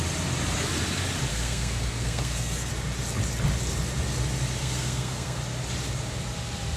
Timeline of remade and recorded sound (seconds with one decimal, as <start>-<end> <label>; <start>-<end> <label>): 0.0-1.3 recorded; 1.3-2.7 remade; 2.7-4.6 recorded; 4.6-5.4 remade; 5.4-6.8 recorded